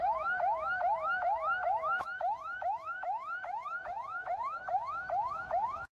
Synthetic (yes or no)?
yes